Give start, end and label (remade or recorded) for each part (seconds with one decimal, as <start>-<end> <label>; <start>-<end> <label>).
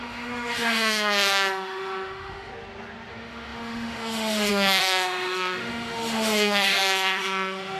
0.0-2.5 remade; 2.5-3.1 recorded; 3.1-7.8 remade